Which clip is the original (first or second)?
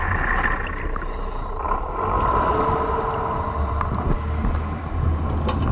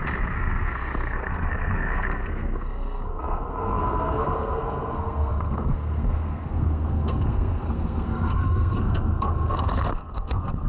first